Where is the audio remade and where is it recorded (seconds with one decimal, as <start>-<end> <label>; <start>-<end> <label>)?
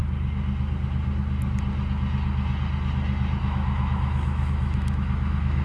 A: 0.0-3.4 recorded; 3.4-5.6 remade